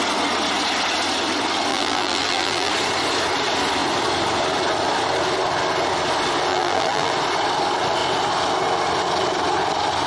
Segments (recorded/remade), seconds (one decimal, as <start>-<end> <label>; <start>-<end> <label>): 0.0-1.7 recorded; 1.7-2.7 remade; 2.7-6.5 recorded; 6.5-7.1 remade; 7.1-10.1 recorded